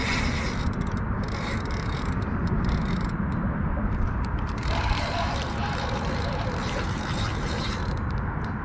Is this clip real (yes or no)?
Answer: no